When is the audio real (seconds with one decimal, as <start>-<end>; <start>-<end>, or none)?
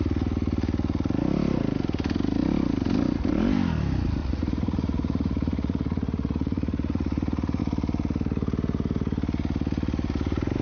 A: 0.0-4.2; 7.6-10.6